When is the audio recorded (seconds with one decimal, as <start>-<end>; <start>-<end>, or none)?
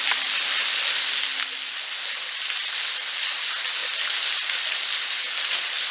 0.0-5.9